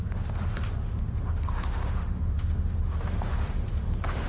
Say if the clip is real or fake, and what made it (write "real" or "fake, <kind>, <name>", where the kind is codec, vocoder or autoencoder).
fake, autoencoder, DAC-VAE